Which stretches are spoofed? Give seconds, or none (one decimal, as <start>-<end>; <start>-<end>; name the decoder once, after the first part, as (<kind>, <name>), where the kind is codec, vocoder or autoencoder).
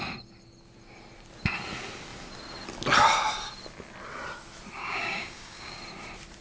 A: 4.8-5.8 (codec, DAC)